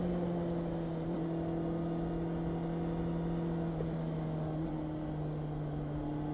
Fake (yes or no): no